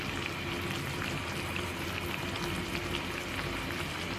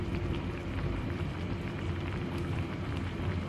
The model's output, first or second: second